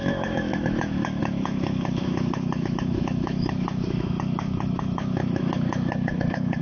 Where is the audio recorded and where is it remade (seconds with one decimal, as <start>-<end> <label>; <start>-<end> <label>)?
0.0-6.6 remade